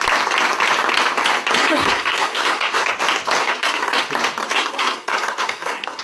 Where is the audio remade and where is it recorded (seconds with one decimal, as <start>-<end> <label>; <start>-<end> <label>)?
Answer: 0.0-1.6 recorded; 1.6-2.9 remade; 2.9-3.4 recorded; 3.4-4.0 remade; 4.0-4.4 recorded; 4.4-6.0 remade